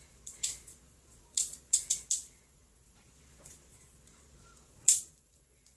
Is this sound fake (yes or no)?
yes